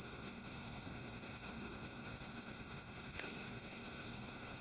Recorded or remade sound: remade